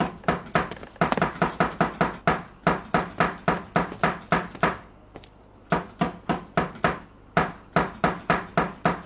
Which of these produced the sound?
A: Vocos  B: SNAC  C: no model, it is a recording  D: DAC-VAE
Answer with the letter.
C